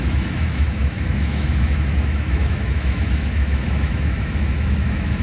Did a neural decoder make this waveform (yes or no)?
yes